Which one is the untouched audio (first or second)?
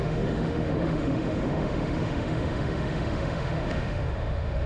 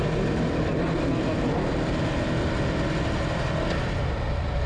second